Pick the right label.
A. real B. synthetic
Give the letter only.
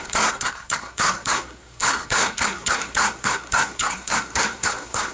B